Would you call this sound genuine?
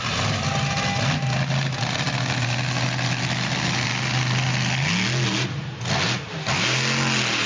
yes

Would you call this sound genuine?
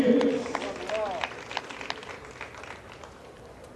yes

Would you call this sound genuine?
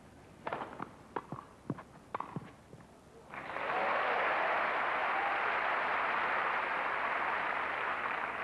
yes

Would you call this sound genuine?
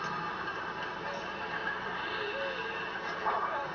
yes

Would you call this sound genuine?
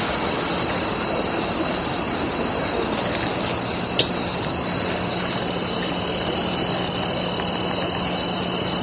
yes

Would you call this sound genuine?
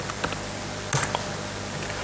yes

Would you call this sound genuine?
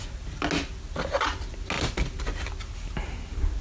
yes